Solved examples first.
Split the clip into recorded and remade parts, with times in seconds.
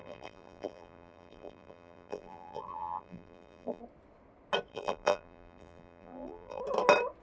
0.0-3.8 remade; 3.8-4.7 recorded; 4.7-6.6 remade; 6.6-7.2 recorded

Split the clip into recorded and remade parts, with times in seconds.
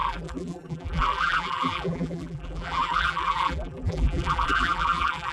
0.0-5.3 remade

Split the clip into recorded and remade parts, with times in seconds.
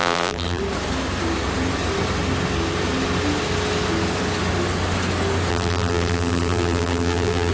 0.0-0.6 remade; 0.6-5.5 recorded; 5.5-7.5 remade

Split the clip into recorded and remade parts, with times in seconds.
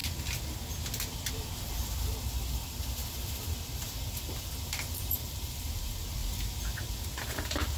0.0-1.3 recorded; 1.3-6.2 remade; 6.2-7.8 recorded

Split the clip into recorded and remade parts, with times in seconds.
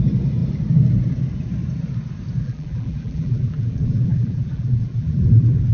0.0-2.4 recorded; 2.4-5.7 remade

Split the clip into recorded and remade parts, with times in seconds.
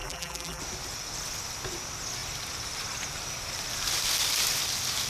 0.0-0.6 remade; 0.6-5.1 recorded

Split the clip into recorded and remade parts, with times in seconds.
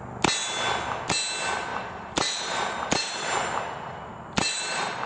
0.0-1.7 recorded; 1.7-5.1 remade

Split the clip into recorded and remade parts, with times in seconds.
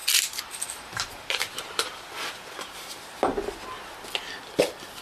0.0-3.0 remade; 3.0-5.0 recorded